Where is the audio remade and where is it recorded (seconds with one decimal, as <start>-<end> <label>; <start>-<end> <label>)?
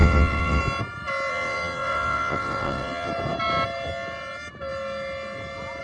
0.0-0.6 remade; 0.6-1.3 recorded; 1.3-3.1 remade; 3.1-5.8 recorded